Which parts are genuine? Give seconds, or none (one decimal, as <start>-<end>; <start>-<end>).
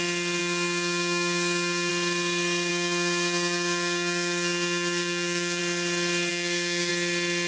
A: 0.0-0.4; 1.9-2.7; 5.6-6.3; 6.9-7.5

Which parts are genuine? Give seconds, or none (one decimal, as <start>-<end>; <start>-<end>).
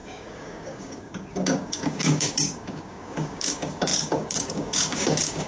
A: none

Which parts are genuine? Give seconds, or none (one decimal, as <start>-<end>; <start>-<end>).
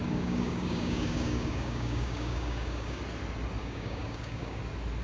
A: 3.0-3.6; 4.6-5.0